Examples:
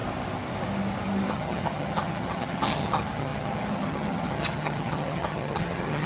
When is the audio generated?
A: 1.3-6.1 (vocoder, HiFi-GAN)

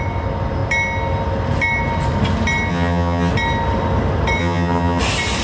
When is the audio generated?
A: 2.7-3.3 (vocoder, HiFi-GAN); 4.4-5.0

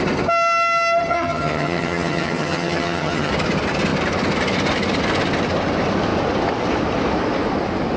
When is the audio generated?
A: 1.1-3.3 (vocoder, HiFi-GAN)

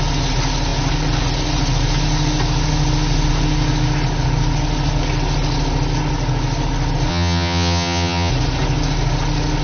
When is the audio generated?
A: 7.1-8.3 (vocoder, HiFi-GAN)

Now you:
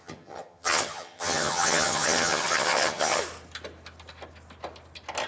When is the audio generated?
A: 0.0-3.2 (vocoder, HiFi-GAN)

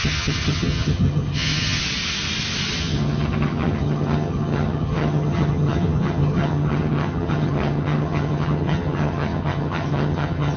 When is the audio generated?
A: 0.0-1.8 (vocoder, HiFi-GAN); 2.8-10.6